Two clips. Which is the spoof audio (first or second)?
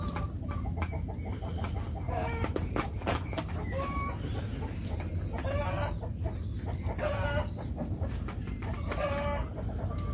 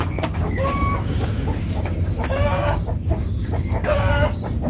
second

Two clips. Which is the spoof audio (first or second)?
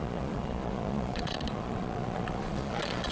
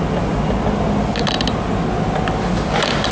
first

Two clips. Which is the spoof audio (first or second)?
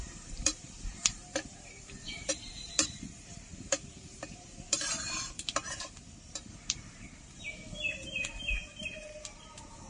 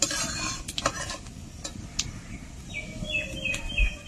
first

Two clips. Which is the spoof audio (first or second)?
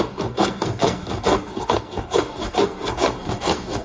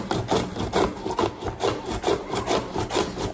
first